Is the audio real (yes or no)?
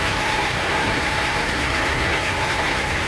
no